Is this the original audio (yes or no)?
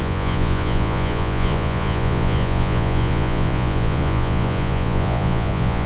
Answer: no